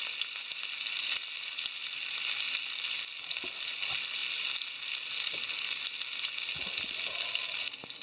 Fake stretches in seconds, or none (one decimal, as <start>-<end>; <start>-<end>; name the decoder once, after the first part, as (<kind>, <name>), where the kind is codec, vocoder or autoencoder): none